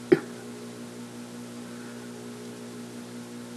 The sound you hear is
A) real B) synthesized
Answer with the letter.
A